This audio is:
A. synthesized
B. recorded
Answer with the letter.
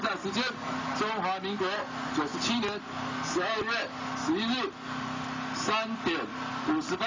B